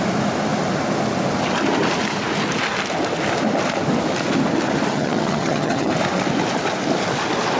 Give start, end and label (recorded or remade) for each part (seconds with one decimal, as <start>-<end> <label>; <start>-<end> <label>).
0.0-4.9 recorded; 4.9-5.9 remade; 5.9-7.6 recorded